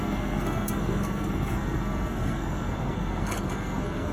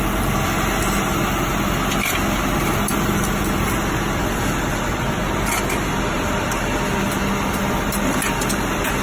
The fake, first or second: first